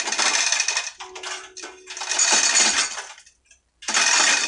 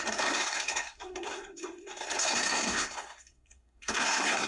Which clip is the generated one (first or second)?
second